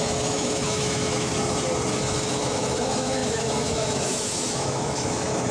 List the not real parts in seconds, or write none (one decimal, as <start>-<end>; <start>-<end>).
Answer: 0.0-1.3; 2.3-5.5